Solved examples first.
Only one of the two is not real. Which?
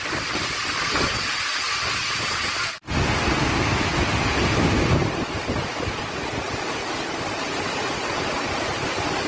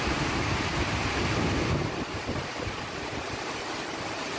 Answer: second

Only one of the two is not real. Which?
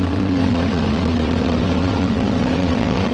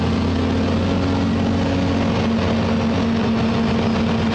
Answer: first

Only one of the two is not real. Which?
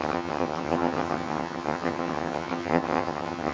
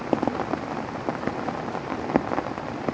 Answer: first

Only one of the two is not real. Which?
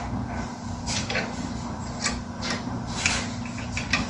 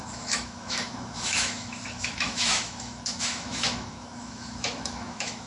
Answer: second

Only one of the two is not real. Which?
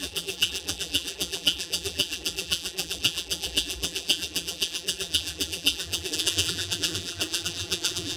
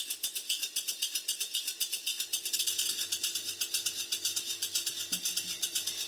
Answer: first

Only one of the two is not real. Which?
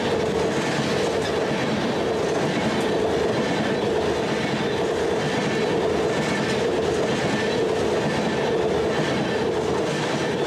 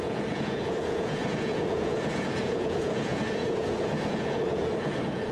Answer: second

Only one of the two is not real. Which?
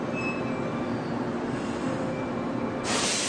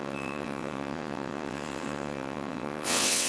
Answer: second